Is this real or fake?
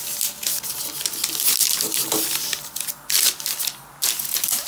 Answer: real